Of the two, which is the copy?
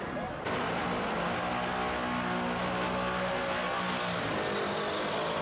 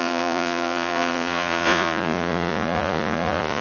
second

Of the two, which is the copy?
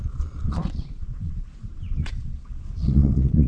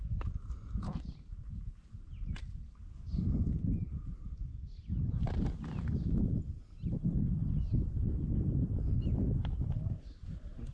first